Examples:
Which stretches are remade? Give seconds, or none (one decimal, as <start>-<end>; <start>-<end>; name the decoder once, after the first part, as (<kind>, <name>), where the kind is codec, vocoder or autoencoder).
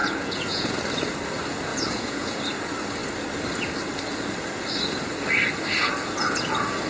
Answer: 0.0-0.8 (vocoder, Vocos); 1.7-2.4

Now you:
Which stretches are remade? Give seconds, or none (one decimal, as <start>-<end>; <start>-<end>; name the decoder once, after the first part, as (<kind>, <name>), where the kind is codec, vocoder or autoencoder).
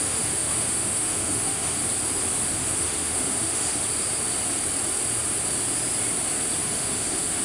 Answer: 0.0-1.8 (autoencoder, DAC-VAE); 2.5-3.8; 6.6-7.4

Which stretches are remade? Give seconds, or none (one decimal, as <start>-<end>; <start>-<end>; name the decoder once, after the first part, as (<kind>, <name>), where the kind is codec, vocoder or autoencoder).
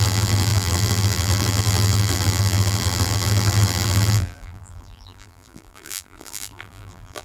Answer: 0.0-7.2 (vocoder, BigVGAN v2)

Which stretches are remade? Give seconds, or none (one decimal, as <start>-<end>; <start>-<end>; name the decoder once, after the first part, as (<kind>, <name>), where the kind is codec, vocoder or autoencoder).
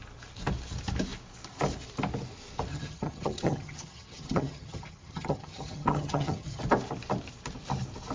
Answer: 2.7-6.6 (vocoder, HiFi-GAN)